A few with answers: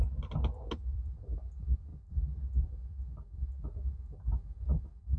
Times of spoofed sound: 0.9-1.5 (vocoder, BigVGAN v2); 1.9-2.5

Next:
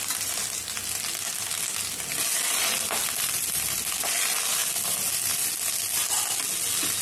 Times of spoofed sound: none